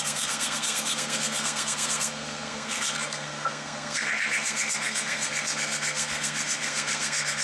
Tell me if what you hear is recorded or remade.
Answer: remade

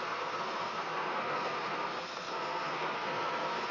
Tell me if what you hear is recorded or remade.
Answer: remade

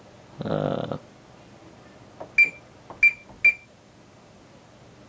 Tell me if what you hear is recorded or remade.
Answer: recorded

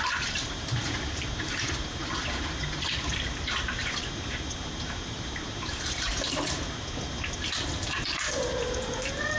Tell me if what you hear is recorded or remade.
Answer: remade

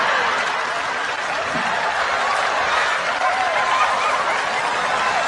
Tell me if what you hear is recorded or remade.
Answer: recorded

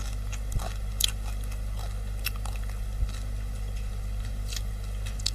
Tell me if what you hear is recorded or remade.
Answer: recorded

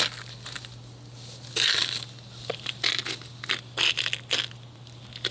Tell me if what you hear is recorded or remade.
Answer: recorded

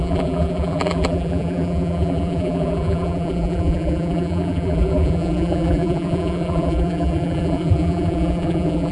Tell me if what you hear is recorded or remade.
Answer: remade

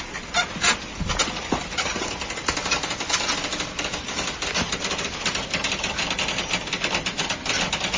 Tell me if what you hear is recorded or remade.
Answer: recorded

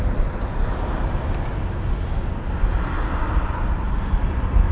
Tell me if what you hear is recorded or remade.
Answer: recorded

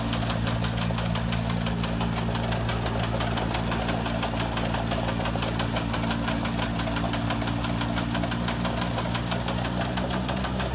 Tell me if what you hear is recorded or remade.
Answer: recorded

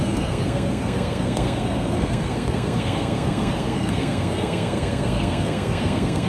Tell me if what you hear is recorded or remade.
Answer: remade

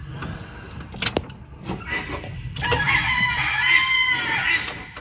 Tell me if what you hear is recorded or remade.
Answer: recorded